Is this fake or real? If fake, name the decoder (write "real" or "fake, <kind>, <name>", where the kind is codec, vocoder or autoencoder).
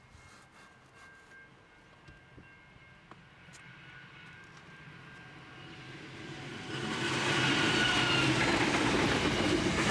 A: real